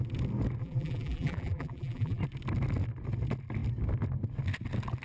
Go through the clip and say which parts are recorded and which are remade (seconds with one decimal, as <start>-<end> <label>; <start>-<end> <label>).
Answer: 0.0-0.6 recorded; 0.6-2.2 remade; 2.2-5.0 recorded